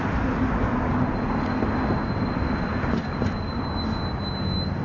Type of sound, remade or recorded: recorded